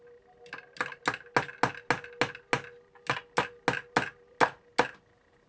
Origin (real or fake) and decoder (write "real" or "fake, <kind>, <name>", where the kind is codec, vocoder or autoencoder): real